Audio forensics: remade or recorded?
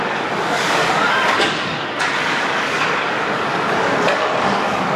remade